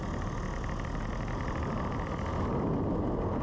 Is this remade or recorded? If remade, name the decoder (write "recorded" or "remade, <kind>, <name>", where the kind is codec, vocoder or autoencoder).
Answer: recorded